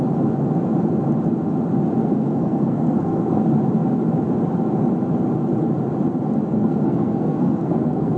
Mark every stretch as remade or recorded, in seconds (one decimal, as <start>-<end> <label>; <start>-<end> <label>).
0.0-2.0 recorded; 2.0-3.4 remade; 3.4-6.5 recorded; 6.5-8.2 remade